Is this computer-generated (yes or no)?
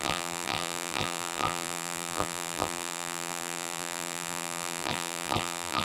yes